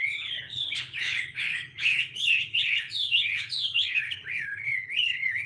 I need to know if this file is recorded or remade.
remade